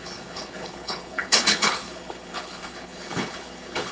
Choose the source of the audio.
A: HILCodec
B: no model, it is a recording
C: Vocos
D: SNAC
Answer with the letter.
A